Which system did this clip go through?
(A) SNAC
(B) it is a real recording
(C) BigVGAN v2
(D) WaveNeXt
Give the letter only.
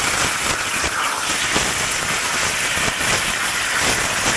B